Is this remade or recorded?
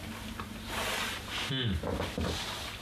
recorded